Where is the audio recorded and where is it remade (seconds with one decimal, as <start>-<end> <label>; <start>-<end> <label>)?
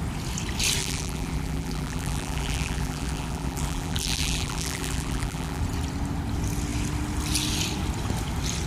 0.0-0.8 recorded; 0.8-5.6 remade; 5.6-8.7 recorded